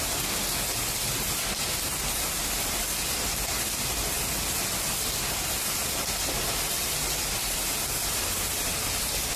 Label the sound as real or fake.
real